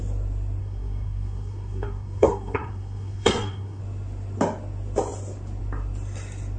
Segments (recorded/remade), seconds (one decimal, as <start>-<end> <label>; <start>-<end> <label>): 0.0-0.6 recorded; 0.6-3.8 remade; 3.8-6.6 recorded